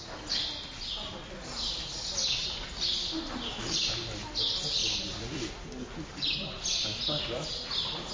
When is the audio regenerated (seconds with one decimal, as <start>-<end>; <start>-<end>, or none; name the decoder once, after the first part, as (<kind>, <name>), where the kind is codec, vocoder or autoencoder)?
4.8-5.8 (vocoder, BigVGAN v2)